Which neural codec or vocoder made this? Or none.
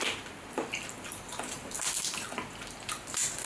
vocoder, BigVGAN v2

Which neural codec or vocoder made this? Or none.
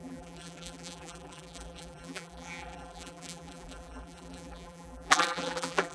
vocoder, BigVGAN v2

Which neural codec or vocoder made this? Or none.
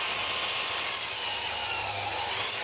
none